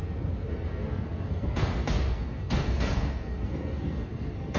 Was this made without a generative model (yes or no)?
no